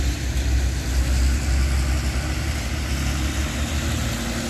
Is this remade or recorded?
recorded